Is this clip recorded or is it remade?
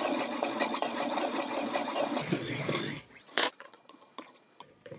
remade